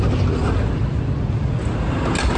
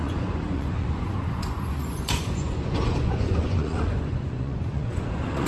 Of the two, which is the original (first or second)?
first